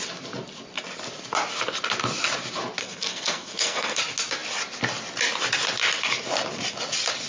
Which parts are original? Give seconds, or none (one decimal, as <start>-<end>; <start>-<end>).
0.0-2.8; 4.0-7.3

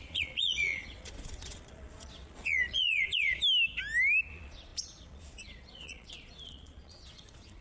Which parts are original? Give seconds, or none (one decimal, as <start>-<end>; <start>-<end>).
3.4-4.3

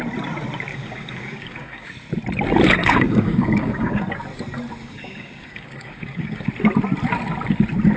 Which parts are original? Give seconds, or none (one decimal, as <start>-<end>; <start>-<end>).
0.0-0.7; 1.9-2.8; 4.0-4.8; 6.5-8.0

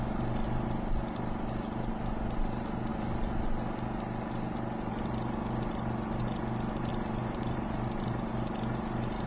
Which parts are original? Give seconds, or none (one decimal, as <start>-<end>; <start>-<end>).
0.0-2.9; 3.5-6.9; 8.3-9.3

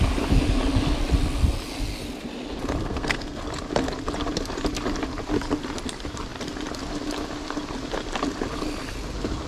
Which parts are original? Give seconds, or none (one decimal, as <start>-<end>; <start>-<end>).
0.0-2.8; 3.4-9.5

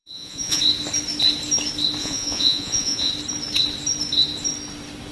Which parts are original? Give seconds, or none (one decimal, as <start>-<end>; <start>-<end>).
0.6-2.0; 3.1-5.1